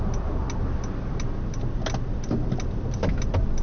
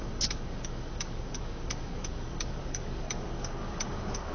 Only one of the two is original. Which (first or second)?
first